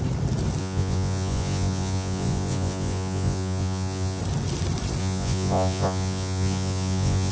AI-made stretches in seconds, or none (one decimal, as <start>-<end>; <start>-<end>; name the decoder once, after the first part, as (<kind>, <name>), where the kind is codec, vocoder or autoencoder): 0.6-4.2 (vocoder, Vocos); 5.0-7.3